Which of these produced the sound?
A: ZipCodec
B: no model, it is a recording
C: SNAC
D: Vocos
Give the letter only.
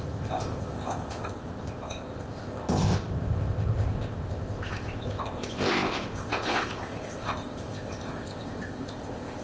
A